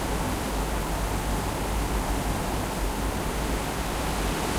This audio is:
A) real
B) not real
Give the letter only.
A